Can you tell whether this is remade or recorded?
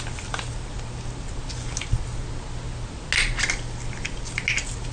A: recorded